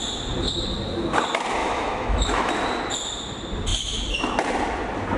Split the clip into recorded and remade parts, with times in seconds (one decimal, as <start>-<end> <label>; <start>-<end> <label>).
0.0-1.6 recorded; 1.6-2.5 remade; 2.5-5.2 recorded

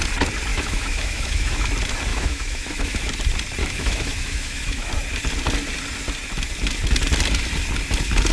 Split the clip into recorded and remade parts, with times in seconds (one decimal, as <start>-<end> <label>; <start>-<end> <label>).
0.0-0.5 recorded; 0.5-1.7 remade; 1.7-2.1 recorded; 2.1-3.1 remade; 3.1-3.6 recorded; 3.6-4.9 remade; 4.9-8.3 recorded

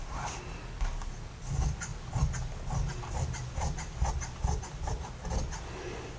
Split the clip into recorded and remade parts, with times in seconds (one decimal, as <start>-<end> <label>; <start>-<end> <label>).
0.0-6.2 recorded